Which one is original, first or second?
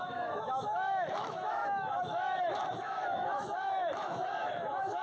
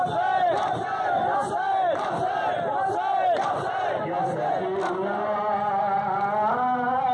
second